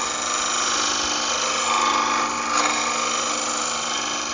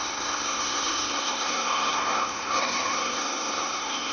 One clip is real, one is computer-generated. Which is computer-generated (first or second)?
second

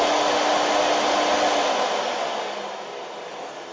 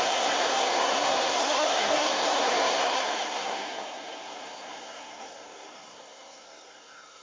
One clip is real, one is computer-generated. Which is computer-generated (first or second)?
second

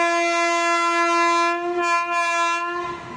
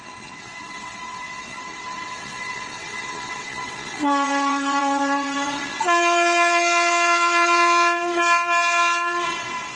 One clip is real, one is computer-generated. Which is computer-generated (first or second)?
second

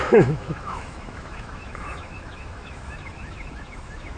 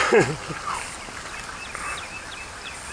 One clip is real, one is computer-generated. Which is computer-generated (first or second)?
first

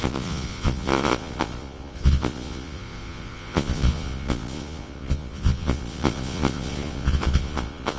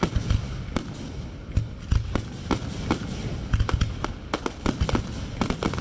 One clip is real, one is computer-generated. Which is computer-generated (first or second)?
first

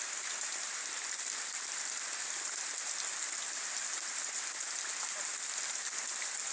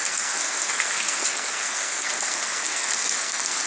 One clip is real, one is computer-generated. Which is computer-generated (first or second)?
second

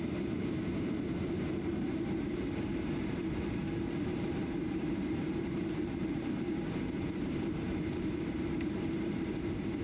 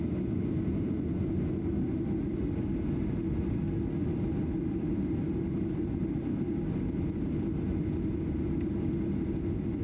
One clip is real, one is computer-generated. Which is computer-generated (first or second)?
first